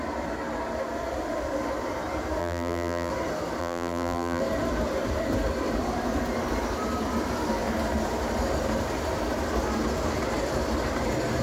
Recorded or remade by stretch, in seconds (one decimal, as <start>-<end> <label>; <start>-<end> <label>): 0.0-2.4 recorded; 2.4-3.1 remade; 3.1-3.6 recorded; 3.6-4.4 remade; 4.4-11.4 recorded